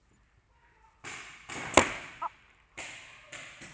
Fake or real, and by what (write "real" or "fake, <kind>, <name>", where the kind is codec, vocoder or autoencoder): real